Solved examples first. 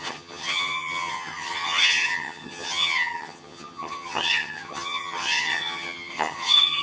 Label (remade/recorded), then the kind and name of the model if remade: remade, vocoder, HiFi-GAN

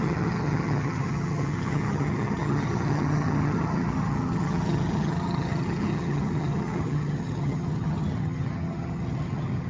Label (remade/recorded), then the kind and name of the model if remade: remade, vocoder, HiFi-GAN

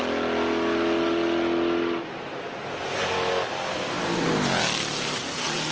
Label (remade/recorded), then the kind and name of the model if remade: recorded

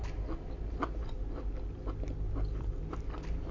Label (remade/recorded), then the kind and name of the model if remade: recorded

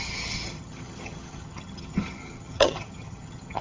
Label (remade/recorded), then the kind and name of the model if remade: remade, vocoder, HiFi-GAN